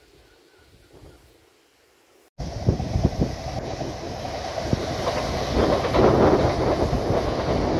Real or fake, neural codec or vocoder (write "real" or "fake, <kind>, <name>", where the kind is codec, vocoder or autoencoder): real